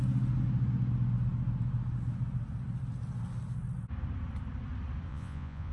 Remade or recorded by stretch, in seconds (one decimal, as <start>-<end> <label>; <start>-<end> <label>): 0.0-5.1 recorded; 5.1-5.7 remade